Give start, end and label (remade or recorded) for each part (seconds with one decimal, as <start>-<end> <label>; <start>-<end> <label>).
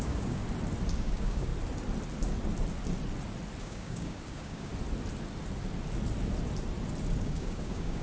0.0-0.4 remade; 0.4-1.0 recorded; 1.0-1.5 remade; 1.5-3.6 recorded; 3.6-4.7 remade; 4.7-7.2 recorded; 7.2-8.0 remade